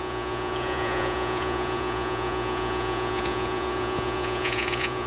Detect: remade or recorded remade